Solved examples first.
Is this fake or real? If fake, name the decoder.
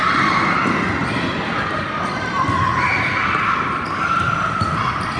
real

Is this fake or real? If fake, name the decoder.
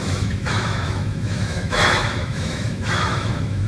fake, autoencoder, DAC-VAE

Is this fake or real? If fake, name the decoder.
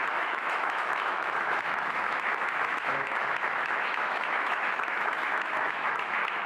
fake, autoencoder, DAC-VAE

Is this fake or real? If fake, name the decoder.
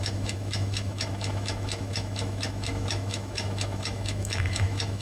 fake, autoencoder, DAC-VAE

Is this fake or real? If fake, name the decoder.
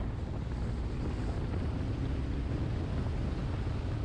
real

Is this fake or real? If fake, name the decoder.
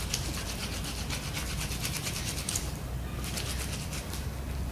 real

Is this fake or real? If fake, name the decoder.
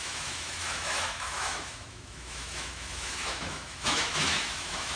fake, autoencoder, DAC-VAE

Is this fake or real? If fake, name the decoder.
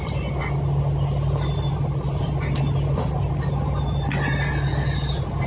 real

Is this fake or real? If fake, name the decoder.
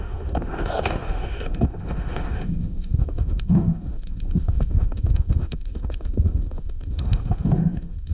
fake, autoencoder, DAC-VAE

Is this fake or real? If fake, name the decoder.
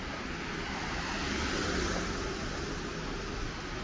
real